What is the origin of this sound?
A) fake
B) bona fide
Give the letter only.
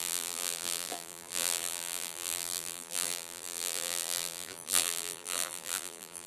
A